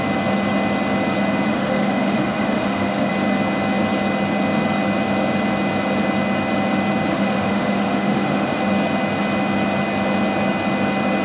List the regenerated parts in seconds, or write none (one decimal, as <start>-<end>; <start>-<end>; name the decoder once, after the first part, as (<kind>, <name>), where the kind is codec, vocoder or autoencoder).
1.5-3.1 (autoencoder, DAC-VAE); 7.1-8.6